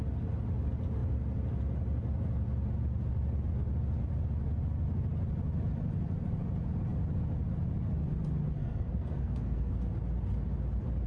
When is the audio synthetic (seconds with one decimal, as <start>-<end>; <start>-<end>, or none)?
8.6-9.8